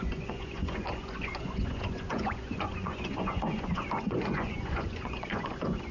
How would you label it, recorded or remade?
remade